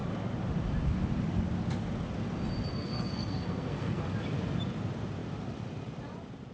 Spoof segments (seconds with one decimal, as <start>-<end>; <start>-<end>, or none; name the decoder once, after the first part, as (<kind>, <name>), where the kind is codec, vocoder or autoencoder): 2.7-4.0 (codec, SNAC)

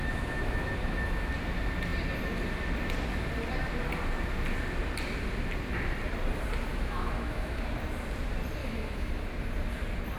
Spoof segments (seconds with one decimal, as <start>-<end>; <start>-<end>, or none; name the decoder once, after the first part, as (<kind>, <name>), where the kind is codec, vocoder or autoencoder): 0.0-1.3 (autoencoder, DAC-VAE); 6.7-7.6; 8.6-9.1

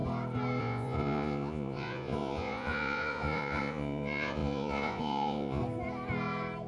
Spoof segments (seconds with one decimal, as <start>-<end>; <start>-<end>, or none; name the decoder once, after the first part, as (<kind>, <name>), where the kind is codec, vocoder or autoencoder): 0.6-5.6 (vocoder, Vocos)

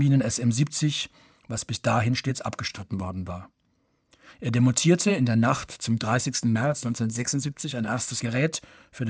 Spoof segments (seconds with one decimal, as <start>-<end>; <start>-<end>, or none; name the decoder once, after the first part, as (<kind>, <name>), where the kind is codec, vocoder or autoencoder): 2.7-3.3 (codec, SNAC); 5.1-8.2

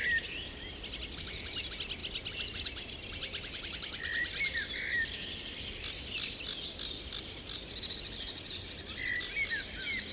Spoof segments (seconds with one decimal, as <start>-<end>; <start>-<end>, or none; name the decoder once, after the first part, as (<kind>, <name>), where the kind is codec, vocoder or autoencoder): none

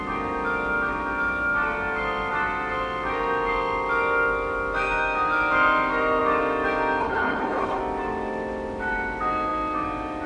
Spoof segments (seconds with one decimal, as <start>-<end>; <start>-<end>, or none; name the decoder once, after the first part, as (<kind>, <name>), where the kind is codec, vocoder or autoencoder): 7.0-7.8 (codec, HILCodec)